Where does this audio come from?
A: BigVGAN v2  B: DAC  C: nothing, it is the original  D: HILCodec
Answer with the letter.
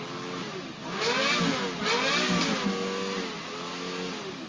C